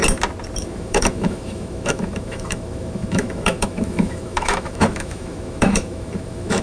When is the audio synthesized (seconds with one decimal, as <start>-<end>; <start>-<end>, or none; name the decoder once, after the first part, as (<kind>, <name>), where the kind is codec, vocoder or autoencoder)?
0.6-6.6 (autoencoder, DAC-VAE)